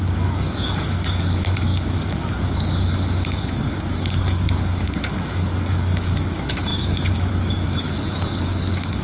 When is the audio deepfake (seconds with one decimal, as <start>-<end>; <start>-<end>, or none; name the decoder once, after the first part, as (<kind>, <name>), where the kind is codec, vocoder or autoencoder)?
0.0-9.0 (codec, DAC)